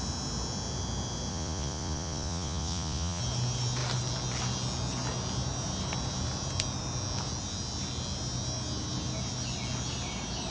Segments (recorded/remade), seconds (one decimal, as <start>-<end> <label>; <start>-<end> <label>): 0.0-1.3 recorded; 1.3-3.2 remade; 3.2-10.5 recorded

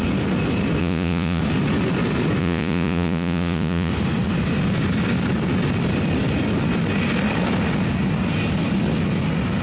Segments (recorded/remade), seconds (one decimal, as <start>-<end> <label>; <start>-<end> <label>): 0.0-0.8 recorded; 0.8-1.4 remade; 1.4-2.4 recorded; 2.4-3.9 remade; 3.9-9.6 recorded

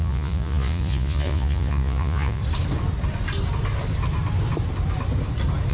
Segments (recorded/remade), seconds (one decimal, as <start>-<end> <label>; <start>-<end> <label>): 0.0-2.4 remade; 2.4-5.7 recorded

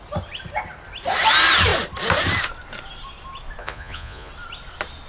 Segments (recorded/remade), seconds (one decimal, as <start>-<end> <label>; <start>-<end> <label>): 0.0-3.6 recorded; 3.6-4.3 remade; 4.3-5.1 recorded